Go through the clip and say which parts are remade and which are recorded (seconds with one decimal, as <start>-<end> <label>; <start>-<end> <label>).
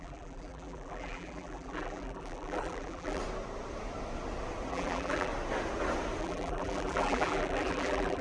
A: 0.0-3.2 remade; 3.2-4.7 recorded; 4.7-5.3 remade; 5.3-6.2 recorded; 6.2-8.2 remade